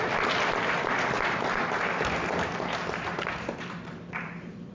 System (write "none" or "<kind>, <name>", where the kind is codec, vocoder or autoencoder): none